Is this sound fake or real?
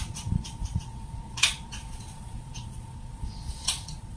fake